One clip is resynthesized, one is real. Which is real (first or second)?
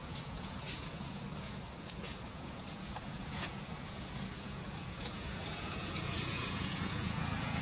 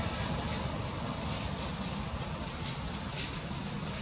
second